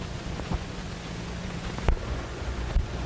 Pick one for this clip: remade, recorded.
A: remade